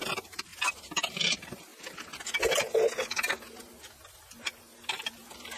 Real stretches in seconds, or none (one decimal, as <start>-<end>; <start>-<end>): 0.5-1.1; 1.7-4.9